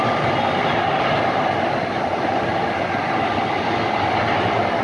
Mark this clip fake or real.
real